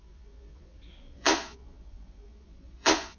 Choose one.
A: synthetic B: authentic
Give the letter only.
A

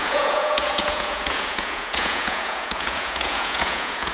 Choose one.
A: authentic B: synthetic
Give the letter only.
B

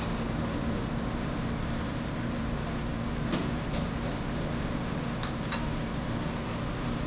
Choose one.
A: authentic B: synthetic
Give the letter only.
B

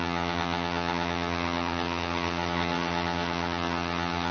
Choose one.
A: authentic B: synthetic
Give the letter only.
B